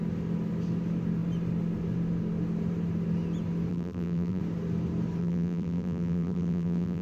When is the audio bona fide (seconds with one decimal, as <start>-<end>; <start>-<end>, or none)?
0.0-3.7; 4.4-5.2